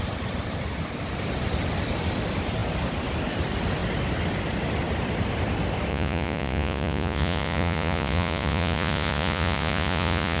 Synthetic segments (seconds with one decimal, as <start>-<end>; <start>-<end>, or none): 5.9-10.4